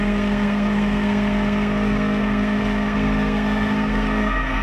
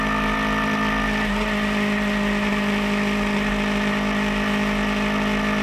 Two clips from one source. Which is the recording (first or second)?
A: second